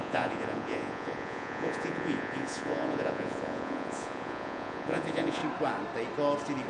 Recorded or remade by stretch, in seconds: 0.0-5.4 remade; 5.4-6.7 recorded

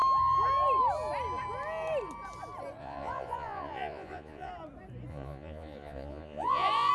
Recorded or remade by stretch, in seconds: 0.0-2.8 recorded; 2.8-4.5 remade; 4.5-5.1 recorded; 5.1-6.9 remade

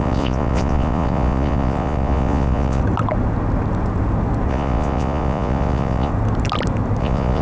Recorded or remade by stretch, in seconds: 0.0-2.8 remade; 2.8-4.5 recorded; 4.5-6.1 remade; 6.1-7.0 recorded; 7.0-7.4 remade

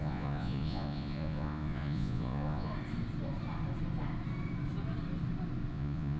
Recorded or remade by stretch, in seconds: 0.0-2.7 remade; 2.7-5.7 recorded; 5.7-6.2 remade

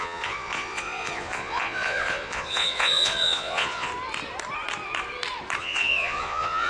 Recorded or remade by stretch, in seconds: 0.0-3.9 remade; 3.9-5.6 recorded; 5.6-6.7 remade

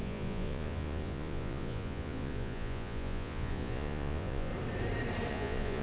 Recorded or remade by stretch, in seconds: 0.0-4.5 remade; 4.5-5.3 recorded; 5.3-5.8 remade

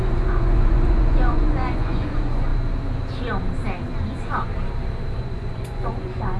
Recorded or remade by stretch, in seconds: 0.0-2.5 remade; 2.5-4.1 recorded; 4.1-4.5 remade; 4.5-5.2 recorded; 5.2-6.4 remade